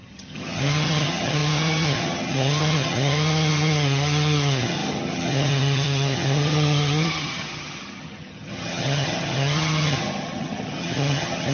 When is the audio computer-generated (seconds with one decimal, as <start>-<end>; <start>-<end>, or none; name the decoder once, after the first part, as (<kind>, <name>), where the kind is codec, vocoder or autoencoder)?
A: 0.0-11.5 (vocoder, HiFi-GAN)